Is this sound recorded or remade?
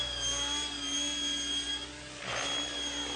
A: recorded